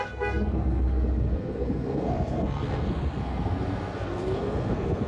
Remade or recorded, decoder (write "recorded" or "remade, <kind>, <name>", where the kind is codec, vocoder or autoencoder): remade, codec, SNAC